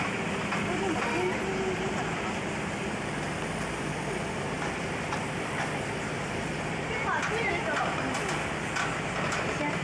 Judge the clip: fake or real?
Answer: real